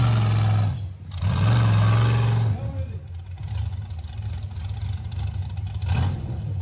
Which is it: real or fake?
real